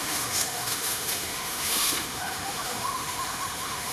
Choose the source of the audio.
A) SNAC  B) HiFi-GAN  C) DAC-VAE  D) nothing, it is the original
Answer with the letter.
C